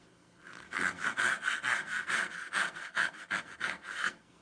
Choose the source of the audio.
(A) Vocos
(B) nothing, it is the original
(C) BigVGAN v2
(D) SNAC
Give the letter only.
D